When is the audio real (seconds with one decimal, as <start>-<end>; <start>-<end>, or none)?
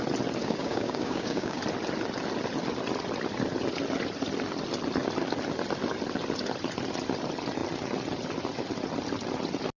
0.0-0.4; 1.6-9.8